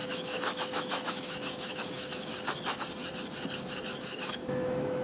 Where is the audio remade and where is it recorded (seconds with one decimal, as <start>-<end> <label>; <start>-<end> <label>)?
0.0-2.3 remade; 2.3-4.0 recorded; 4.0-5.0 remade